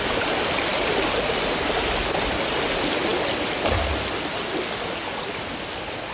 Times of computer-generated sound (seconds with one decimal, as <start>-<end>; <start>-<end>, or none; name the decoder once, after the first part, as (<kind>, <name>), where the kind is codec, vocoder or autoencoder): none